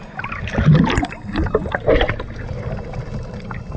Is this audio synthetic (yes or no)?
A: no